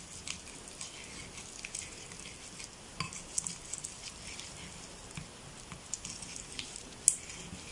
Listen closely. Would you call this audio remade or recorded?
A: recorded